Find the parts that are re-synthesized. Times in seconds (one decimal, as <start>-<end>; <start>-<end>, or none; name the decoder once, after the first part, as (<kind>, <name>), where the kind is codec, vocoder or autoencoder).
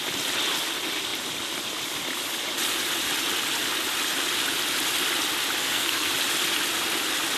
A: 5.6-6.1 (codec, SNAC)